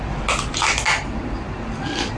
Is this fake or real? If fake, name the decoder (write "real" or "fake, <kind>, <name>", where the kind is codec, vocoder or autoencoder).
real